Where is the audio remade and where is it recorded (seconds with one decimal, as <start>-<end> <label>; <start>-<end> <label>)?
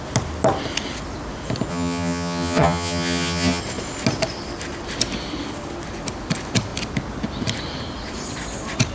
0.0-1.7 recorded; 1.7-3.6 remade; 3.6-8.9 recorded